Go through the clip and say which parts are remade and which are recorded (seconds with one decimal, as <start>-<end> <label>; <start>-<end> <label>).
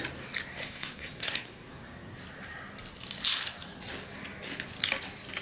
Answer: 0.0-0.5 recorded; 0.5-2.2 remade; 2.2-5.4 recorded